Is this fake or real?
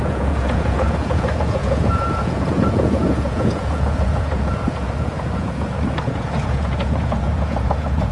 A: fake